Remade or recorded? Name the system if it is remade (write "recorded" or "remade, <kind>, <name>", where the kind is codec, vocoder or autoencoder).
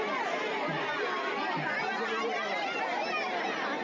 recorded